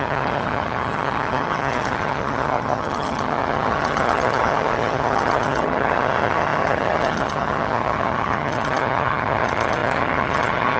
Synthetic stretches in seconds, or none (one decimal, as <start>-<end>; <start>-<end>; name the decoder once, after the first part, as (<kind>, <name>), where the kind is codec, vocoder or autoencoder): 0.0-10.8 (vocoder, HiFi-GAN)